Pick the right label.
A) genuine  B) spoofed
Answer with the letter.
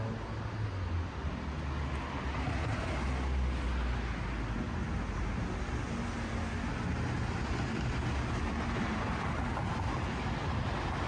A